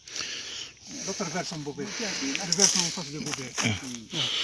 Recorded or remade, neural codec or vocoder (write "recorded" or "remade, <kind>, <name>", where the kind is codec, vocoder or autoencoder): recorded